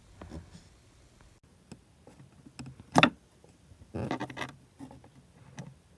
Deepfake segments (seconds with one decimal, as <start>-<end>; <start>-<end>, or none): none

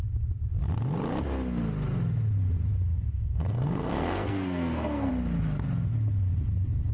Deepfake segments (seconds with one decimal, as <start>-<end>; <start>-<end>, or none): 2.9-5.1